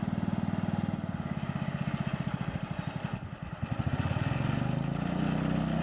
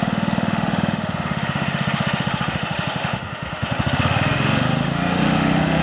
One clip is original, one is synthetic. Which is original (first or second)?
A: first